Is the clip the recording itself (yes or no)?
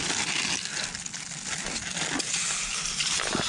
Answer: yes